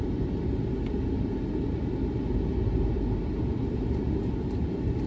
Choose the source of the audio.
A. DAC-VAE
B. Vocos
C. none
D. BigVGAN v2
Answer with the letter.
C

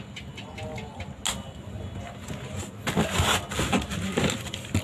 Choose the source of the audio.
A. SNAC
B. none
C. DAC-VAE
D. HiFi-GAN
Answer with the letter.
B